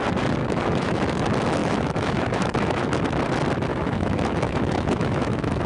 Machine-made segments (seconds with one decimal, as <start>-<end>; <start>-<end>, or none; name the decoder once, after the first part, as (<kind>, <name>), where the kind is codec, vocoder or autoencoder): 0.4-1.2 (autoencoder, DAC-VAE); 1.6-3.0; 3.7-5.7